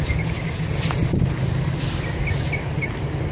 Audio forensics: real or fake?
real